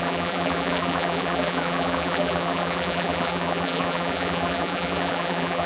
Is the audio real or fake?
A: fake